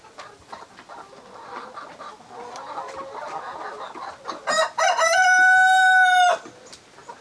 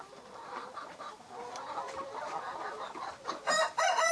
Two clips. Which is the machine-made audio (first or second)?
second